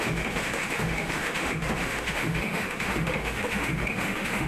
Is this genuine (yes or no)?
no